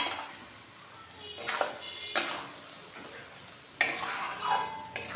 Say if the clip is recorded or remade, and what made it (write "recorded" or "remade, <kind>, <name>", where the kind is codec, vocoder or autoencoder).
recorded